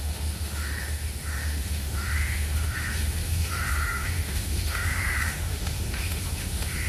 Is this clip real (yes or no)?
no